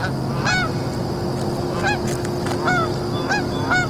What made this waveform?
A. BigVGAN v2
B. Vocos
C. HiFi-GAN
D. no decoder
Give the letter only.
D